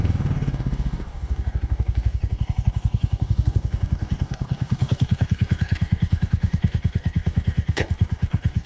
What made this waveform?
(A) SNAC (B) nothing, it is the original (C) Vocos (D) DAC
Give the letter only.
D